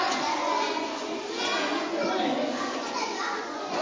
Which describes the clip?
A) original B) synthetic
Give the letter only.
B